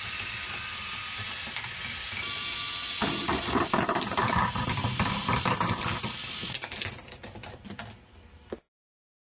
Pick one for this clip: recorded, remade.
recorded